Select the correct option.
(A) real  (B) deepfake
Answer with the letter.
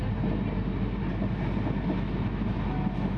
A